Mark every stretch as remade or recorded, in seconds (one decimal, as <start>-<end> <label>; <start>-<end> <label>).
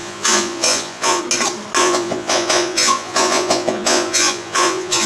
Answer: 0.0-1.2 remade; 1.2-1.8 recorded; 1.8-5.1 remade